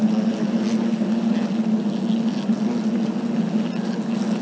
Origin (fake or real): real